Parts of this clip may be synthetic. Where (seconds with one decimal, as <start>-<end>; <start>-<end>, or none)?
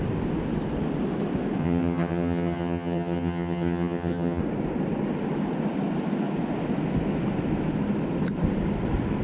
1.6-4.4